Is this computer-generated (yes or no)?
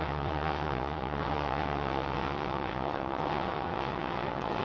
yes